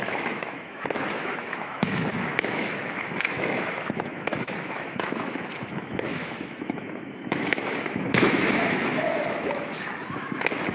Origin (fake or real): fake